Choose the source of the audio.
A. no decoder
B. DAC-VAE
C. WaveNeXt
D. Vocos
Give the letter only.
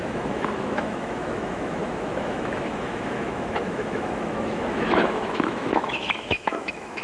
B